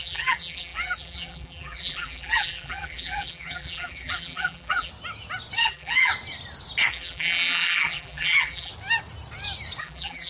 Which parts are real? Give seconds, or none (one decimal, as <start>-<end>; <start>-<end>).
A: 4.9-5.6; 6.1-6.9; 8.7-9.8